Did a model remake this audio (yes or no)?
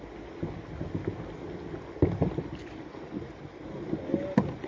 no